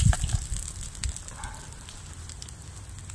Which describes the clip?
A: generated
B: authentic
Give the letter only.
B